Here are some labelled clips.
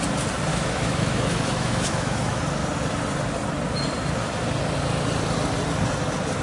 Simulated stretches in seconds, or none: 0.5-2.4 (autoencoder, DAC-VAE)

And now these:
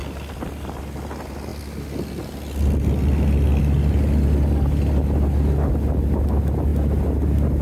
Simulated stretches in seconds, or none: 0.0-0.8 (vocoder, BigVGAN v2)

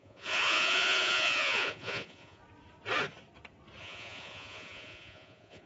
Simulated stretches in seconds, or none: 0.0-2.4 (vocoder, Vocos); 3.8-5.7

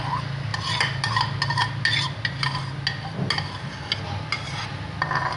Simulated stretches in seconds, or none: none

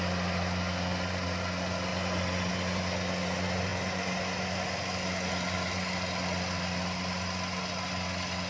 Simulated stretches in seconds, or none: none